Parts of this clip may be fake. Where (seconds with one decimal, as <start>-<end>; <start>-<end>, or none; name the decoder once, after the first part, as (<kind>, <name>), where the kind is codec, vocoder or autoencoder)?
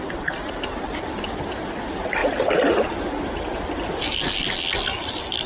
none